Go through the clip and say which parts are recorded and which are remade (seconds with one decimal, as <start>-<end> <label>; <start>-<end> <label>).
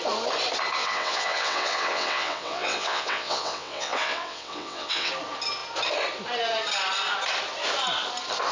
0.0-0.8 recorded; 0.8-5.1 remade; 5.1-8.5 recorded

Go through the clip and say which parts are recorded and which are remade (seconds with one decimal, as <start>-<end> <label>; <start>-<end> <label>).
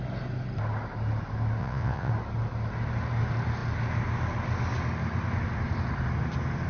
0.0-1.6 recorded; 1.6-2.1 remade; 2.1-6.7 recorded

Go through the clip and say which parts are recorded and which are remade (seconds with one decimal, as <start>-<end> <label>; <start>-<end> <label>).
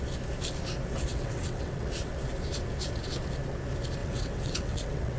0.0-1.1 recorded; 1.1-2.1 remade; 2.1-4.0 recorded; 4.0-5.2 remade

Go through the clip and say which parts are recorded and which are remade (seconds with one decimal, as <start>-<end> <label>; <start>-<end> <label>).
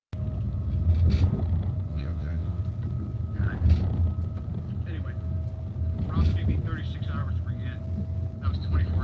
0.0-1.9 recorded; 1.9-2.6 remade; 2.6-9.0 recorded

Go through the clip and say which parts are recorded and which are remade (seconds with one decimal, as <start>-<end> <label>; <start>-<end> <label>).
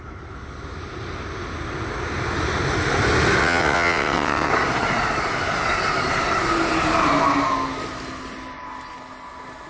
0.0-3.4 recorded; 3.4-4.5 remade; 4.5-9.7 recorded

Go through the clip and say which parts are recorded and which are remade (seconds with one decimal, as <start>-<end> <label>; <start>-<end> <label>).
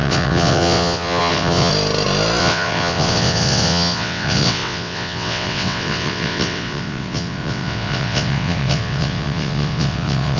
0.0-1.7 remade; 1.7-2.4 recorded; 2.4-10.4 remade